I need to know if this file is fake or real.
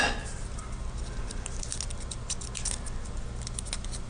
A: real